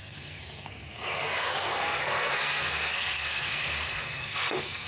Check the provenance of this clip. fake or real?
fake